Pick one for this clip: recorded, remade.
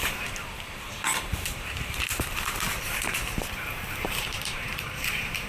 remade